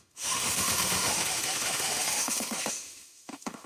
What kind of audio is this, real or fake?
fake